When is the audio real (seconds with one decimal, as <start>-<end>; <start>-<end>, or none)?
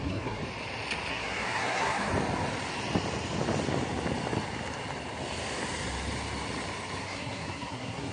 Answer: 0.4-1.1; 2.1-7.0